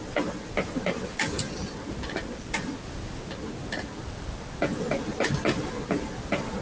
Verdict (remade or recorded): recorded